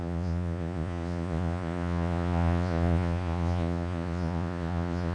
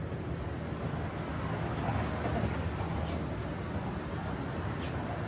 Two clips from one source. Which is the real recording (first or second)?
second